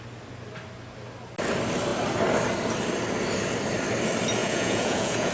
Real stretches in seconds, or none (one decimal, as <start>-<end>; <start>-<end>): 0.0-4.4